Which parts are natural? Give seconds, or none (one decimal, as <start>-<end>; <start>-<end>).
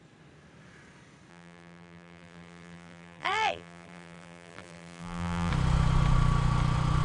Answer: 0.0-1.3; 5.5-7.0